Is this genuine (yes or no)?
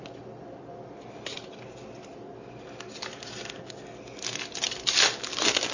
yes